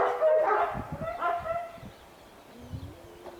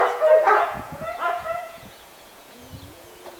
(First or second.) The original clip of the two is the first